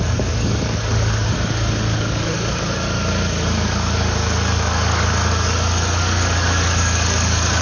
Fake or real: fake